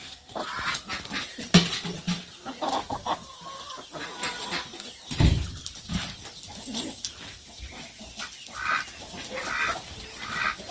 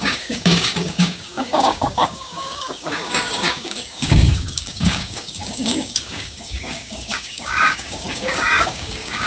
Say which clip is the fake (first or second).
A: second